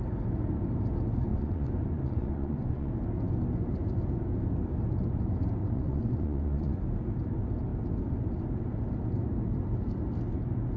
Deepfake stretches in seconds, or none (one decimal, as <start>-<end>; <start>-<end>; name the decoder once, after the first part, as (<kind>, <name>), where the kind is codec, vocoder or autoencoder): 1.3-2.9 (vocoder, Vocos); 5.6-6.7